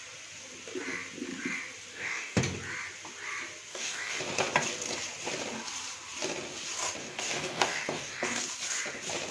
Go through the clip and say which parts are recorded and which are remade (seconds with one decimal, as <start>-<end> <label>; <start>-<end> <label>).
0.0-1.9 recorded; 1.9-2.4 remade; 2.4-3.7 recorded; 3.7-4.2 remade; 4.2-7.0 recorded; 7.0-8.4 remade; 8.4-9.3 recorded